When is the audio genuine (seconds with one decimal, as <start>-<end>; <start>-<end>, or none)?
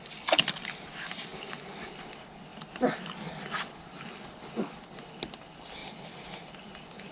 0.0-7.1